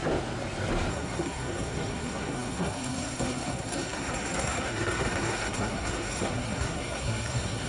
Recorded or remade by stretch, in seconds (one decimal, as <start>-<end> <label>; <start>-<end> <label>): 0.0-0.9 recorded; 0.9-7.7 remade